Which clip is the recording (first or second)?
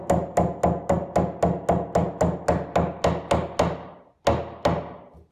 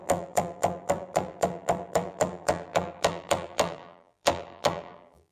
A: first